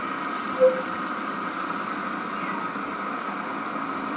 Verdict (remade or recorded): recorded